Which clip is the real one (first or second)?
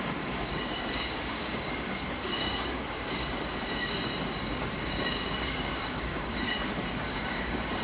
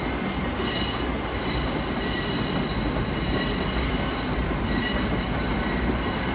second